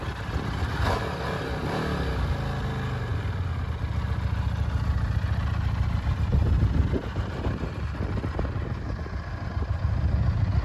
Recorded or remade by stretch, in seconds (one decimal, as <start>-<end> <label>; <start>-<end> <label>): 0.0-10.6 recorded